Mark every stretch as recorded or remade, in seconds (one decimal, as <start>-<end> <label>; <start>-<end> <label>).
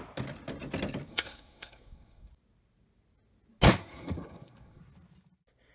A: 0.0-1.1 recorded; 1.1-2.3 remade; 2.3-3.8 recorded; 3.8-4.8 remade; 4.8-5.7 recorded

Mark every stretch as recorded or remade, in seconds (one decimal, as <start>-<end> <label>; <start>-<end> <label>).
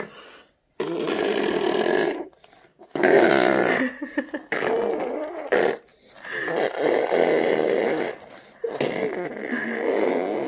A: 0.0-2.7 recorded; 2.7-3.3 remade; 3.3-10.5 recorded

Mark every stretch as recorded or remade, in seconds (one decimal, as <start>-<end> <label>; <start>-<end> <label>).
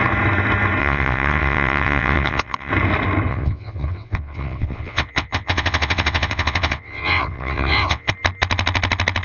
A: 0.0-0.8 recorded; 0.8-2.7 remade; 2.7-3.3 recorded; 3.3-8.1 remade; 8.1-9.2 recorded